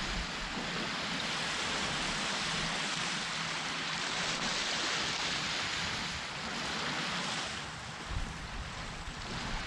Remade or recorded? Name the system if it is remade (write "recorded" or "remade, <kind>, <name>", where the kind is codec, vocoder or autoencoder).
recorded